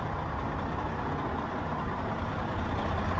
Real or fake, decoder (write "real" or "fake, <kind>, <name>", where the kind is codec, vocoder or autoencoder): real